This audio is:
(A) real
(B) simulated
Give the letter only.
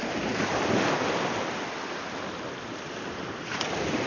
A